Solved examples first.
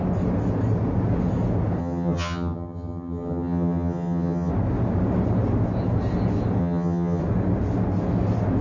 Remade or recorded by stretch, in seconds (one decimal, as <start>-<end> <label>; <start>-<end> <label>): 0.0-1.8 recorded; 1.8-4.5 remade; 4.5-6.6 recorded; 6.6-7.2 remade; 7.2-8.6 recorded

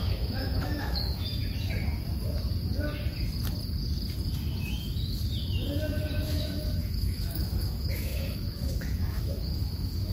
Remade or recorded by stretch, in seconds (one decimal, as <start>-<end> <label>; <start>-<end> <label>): 0.0-1.4 remade; 1.4-6.3 recorded; 6.3-10.1 remade

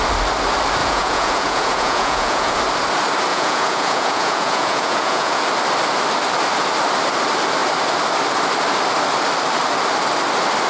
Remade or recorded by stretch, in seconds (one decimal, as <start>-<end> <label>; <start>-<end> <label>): 0.0-0.8 recorded; 0.8-2.6 remade; 2.6-3.3 recorded; 3.3-5.4 remade; 5.4-10.7 recorded

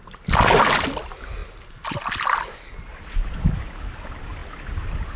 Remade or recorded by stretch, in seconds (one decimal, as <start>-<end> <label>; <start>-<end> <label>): 0.0-5.2 recorded

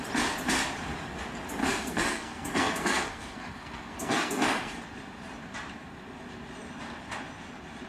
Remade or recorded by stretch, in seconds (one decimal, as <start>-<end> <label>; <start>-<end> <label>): 0.0-1.6 recorded; 1.6-4.8 remade; 4.8-7.9 recorded